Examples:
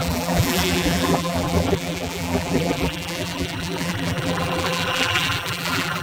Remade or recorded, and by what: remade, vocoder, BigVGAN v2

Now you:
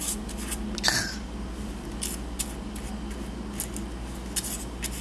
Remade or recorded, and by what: recorded